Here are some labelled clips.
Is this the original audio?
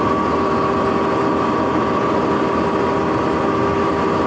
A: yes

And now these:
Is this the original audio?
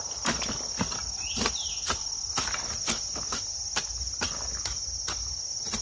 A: yes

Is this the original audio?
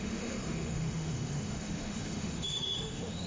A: no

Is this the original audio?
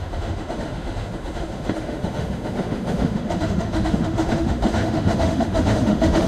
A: no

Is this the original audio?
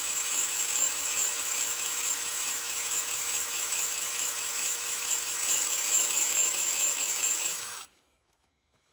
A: no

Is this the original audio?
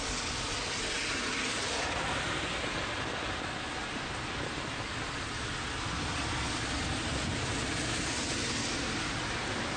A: yes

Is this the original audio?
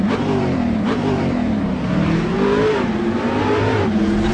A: no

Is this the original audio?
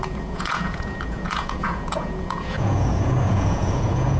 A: no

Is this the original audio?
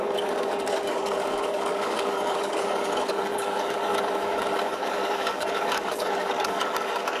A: no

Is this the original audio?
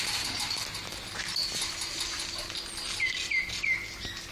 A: yes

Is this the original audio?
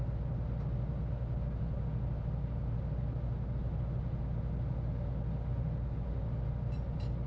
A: yes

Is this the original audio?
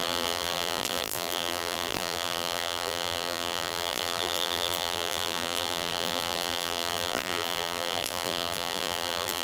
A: no